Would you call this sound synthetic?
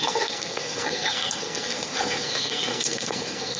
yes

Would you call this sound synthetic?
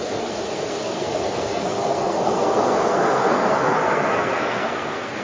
yes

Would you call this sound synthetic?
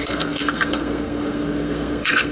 yes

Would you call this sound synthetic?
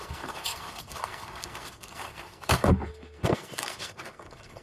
yes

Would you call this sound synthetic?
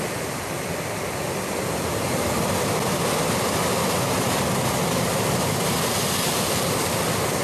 no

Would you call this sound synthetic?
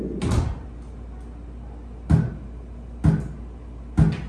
no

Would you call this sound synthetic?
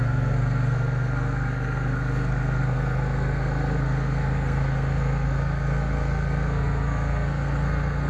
yes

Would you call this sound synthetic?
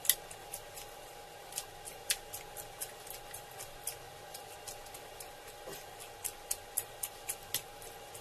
no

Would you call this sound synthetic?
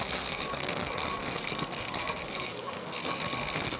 yes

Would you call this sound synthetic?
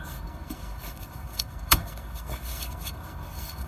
yes